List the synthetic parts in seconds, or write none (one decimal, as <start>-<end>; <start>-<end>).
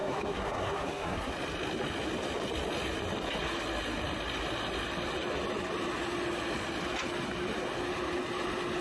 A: 0.0-1.3